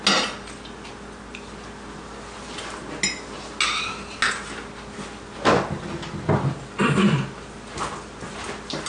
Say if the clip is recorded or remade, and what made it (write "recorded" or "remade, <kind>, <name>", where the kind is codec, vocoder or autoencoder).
recorded